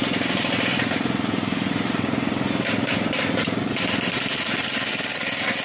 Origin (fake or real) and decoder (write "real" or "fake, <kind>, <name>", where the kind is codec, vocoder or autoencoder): real